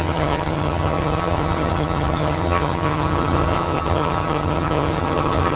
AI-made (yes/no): yes